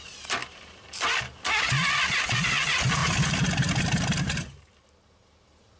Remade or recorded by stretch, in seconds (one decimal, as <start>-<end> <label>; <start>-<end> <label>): 0.0-5.8 recorded